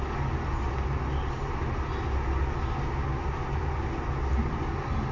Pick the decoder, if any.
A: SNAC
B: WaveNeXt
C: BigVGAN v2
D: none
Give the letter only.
D